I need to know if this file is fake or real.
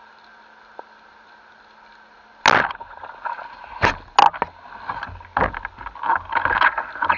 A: real